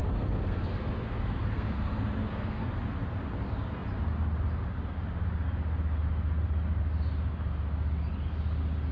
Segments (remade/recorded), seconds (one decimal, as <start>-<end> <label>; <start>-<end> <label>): 0.0-2.8 remade; 2.8-8.9 recorded